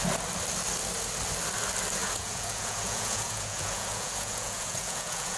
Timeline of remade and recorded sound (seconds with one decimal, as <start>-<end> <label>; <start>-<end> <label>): 0.0-2.0 recorded; 2.0-5.4 remade